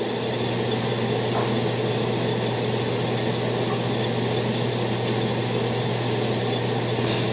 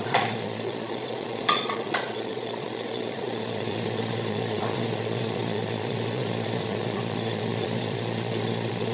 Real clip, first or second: first